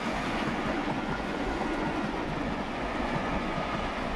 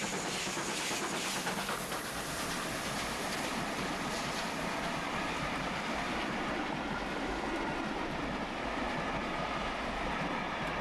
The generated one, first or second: first